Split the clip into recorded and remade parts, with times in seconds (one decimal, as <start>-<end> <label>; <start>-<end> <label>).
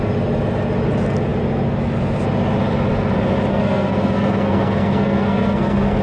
0.0-3.5 recorded; 3.5-6.0 remade